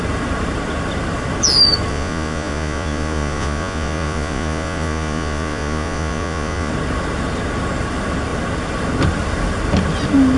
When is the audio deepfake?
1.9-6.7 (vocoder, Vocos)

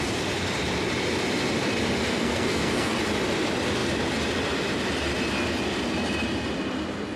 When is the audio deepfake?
2.1-2.9 (codec, SNAC)

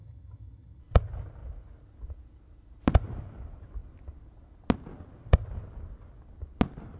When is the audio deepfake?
0.0-0.8 (vocoder, HiFi-GAN)